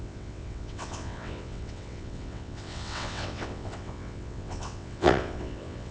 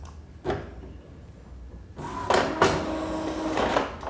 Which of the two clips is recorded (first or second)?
second